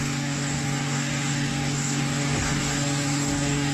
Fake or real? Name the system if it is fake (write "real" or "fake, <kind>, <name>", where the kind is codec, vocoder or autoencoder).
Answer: fake, codec, DAC